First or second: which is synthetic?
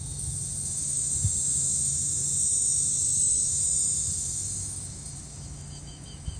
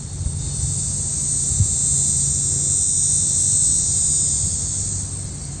first